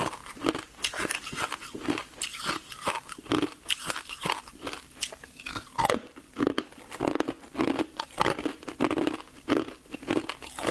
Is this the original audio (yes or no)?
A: yes